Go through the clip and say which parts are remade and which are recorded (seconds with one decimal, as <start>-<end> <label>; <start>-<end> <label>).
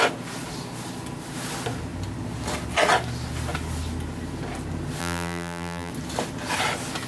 0.0-5.0 recorded; 5.0-5.9 remade; 5.9-7.1 recorded